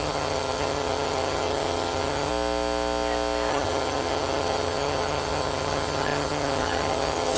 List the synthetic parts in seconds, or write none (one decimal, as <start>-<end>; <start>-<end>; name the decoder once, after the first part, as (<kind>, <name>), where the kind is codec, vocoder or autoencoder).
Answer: 0.0-2.3 (vocoder, HiFi-GAN); 3.5-7.4

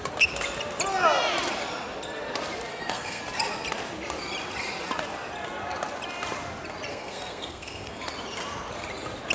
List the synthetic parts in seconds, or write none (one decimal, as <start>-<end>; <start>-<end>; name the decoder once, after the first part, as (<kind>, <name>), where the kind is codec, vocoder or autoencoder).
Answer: 2.7-3.2 (codec, SNAC); 6.9-8.0

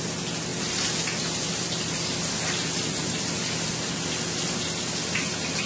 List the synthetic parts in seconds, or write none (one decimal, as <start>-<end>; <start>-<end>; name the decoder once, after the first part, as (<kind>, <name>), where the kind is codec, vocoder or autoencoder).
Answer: 0.5-3.9 (vocoder, BigVGAN v2)

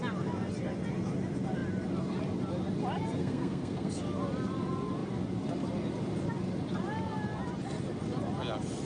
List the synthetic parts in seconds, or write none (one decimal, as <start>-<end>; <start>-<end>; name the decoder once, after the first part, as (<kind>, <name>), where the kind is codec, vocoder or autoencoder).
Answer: 3.2-3.9 (codec, SNAC)